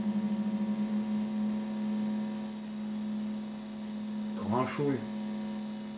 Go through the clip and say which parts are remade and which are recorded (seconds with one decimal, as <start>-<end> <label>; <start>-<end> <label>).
0.0-6.0 recorded